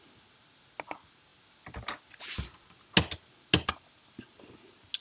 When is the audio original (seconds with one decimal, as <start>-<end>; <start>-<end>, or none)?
0.0-5.0

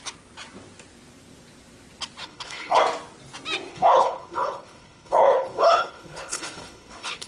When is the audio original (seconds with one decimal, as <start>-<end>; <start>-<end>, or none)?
0.0-2.2; 2.8-3.7

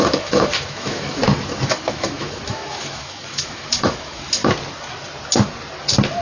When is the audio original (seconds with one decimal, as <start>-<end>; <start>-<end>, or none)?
1.2-1.7; 4.4-6.2

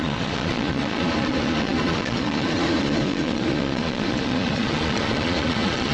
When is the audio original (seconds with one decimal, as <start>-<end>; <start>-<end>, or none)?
none

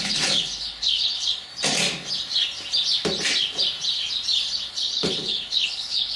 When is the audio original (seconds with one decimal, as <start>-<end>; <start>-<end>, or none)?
1.5-4.7

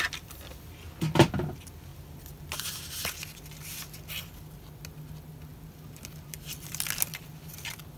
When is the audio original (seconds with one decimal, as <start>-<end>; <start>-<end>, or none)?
0.0-8.0